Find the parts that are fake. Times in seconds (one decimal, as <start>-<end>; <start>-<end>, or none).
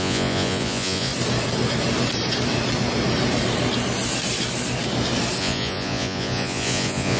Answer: 0.0-1.1; 5.4-7.2